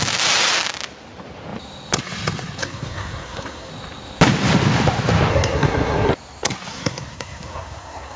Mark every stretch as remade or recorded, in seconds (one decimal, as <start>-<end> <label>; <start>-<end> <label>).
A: 0.0-2.6 recorded; 2.6-3.7 remade; 3.7-5.3 recorded; 5.3-6.1 remade; 6.1-6.7 recorded; 6.7-8.2 remade